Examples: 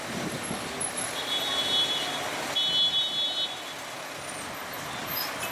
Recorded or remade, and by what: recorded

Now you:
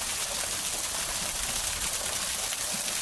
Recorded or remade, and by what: recorded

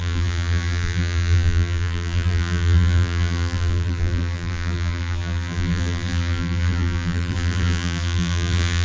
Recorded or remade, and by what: remade, vocoder, BigVGAN v2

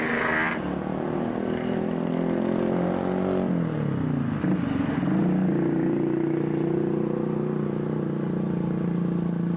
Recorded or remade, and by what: recorded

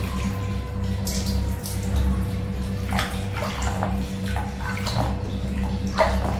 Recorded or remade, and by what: recorded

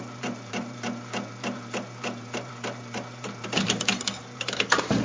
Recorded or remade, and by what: remade, vocoder, BigVGAN v2